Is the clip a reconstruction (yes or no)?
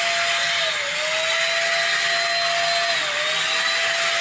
no